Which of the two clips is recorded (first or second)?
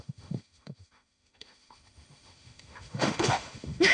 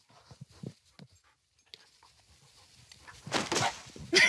second